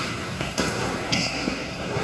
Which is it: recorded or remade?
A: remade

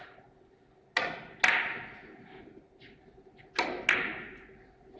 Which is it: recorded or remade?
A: recorded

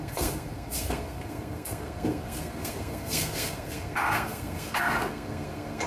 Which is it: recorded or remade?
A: remade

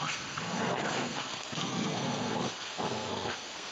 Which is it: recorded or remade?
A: remade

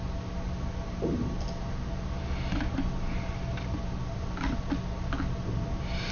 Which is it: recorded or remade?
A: recorded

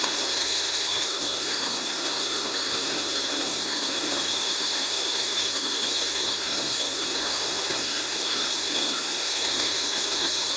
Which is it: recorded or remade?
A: remade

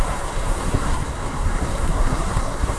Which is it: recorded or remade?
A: remade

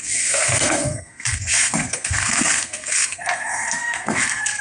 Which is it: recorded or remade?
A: remade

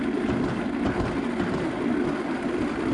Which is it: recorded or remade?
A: recorded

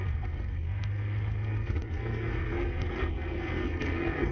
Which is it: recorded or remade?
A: remade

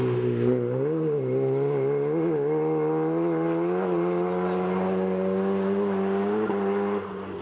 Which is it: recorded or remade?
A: recorded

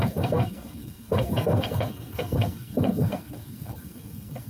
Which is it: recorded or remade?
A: remade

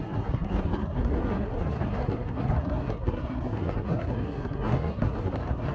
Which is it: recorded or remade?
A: remade